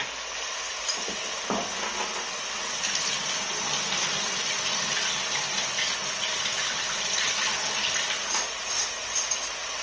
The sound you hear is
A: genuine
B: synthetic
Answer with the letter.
A